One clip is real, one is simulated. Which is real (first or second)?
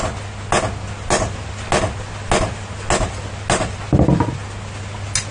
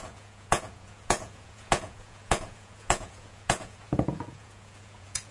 first